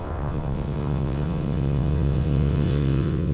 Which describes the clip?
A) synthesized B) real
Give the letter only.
A